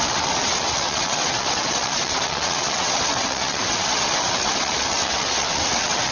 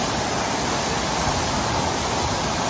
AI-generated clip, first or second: first